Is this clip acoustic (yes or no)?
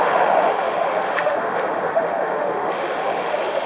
no